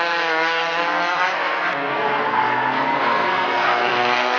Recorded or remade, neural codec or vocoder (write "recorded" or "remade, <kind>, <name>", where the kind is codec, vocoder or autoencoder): remade, codec, SNAC